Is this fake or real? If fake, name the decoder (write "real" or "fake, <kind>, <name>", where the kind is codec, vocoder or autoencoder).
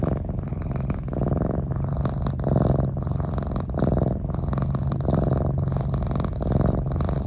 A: real